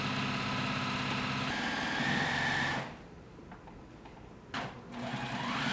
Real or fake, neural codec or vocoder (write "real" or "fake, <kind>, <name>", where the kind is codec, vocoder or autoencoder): real